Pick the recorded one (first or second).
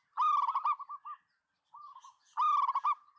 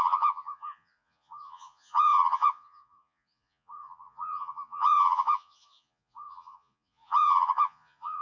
first